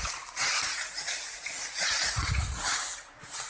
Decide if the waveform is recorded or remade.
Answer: remade